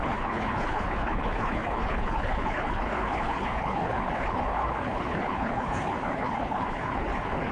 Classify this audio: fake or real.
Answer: fake